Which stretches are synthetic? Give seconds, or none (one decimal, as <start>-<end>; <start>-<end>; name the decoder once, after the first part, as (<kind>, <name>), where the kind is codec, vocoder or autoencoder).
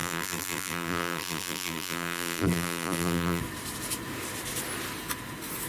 0.0-3.4 (vocoder, BigVGAN v2)